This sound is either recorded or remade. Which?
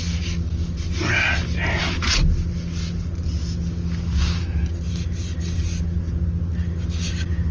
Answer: recorded